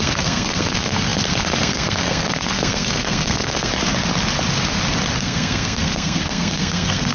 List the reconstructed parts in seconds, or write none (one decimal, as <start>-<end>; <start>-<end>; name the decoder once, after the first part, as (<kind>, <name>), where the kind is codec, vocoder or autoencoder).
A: 0.0-3.7 (codec, SNAC); 5.2-7.1